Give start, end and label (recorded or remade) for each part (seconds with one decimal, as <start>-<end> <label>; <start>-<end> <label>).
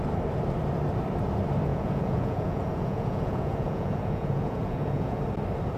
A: 0.0-1.7 recorded; 1.7-5.2 remade; 5.2-5.8 recorded